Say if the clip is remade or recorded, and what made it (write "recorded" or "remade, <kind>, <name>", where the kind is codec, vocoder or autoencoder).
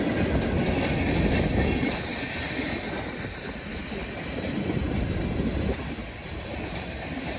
recorded